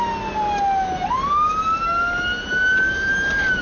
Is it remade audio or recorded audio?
recorded